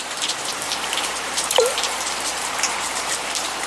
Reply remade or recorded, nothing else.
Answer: remade